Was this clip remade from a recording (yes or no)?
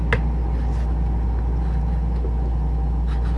no